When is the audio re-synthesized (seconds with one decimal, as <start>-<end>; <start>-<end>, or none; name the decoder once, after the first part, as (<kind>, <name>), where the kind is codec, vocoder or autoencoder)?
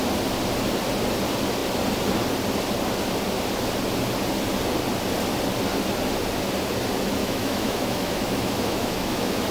7.2-9.5 (autoencoder, DAC-VAE)